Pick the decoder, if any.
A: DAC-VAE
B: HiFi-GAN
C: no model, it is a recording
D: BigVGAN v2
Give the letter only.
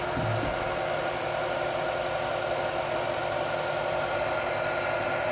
C